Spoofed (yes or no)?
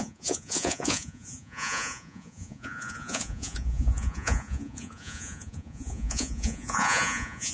yes